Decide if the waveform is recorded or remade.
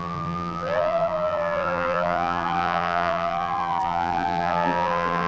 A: remade